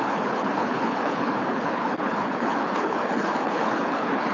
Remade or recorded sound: remade